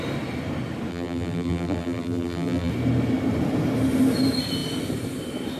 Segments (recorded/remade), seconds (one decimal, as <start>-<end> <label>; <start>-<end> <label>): 0.0-0.9 recorded; 0.9-2.7 remade; 2.7-5.6 recorded